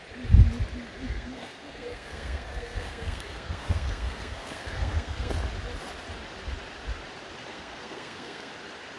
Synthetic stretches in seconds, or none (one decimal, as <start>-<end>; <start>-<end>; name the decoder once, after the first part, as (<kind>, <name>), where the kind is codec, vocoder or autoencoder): 1.0-5.3 (codec, SNAC); 7.5-8.5